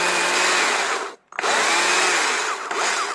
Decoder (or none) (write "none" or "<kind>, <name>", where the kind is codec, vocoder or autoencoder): none